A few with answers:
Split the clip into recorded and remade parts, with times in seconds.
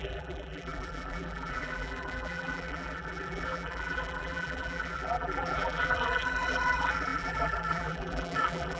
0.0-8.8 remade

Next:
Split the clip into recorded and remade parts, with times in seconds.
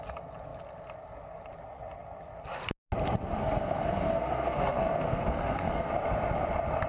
0.0-3.4 recorded; 3.4-5.9 remade; 5.9-6.9 recorded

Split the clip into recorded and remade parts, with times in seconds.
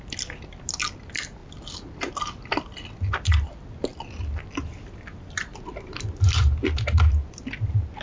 0.0-8.0 recorded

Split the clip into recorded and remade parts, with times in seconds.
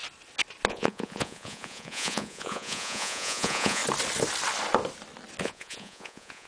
0.0-0.7 recorded; 0.7-3.8 remade; 3.8-5.4 recorded; 5.4-6.5 remade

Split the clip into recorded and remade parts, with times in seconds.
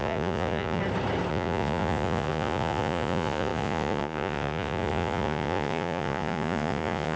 0.0-0.8 remade; 0.8-1.3 recorded; 1.3-7.2 remade